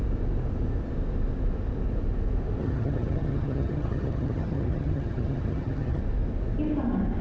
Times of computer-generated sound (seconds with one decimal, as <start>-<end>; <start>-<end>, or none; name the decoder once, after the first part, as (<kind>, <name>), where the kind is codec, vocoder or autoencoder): 2.6-6.0 (vocoder, HiFi-GAN)